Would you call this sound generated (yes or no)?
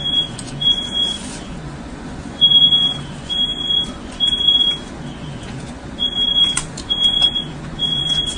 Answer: yes